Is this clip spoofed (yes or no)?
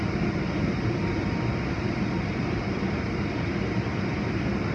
no